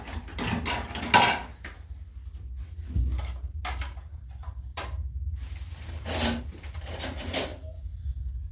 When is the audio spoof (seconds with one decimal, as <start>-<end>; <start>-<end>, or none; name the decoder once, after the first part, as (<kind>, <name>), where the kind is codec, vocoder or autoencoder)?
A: none